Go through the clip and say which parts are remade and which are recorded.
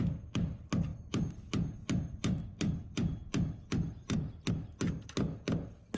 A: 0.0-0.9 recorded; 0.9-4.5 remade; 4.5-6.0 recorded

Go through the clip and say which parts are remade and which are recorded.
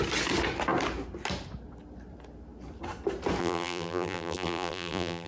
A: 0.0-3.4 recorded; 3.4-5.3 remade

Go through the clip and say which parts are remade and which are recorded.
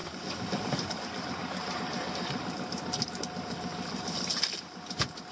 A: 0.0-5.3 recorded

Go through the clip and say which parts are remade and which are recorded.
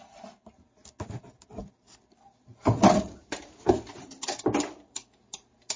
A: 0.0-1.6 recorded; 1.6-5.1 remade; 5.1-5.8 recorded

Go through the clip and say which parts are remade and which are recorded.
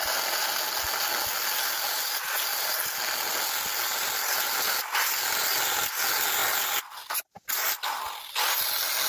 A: 0.0-3.9 recorded; 3.9-4.5 remade; 4.5-9.1 recorded